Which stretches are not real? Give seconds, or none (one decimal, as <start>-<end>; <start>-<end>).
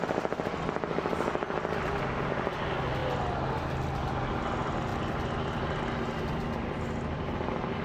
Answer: none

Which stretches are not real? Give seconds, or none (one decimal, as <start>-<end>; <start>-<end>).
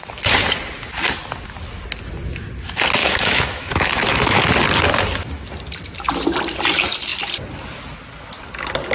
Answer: 3.0-4.4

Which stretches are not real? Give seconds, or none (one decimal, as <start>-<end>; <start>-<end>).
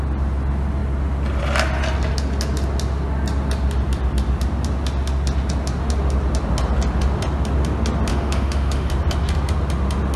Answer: 8.1-8.9